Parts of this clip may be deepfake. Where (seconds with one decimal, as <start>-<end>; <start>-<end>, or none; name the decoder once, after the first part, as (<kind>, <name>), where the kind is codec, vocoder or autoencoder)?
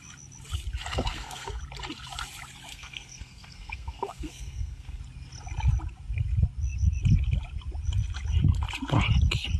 0.9-1.6 (codec, SNAC); 2.7-5.0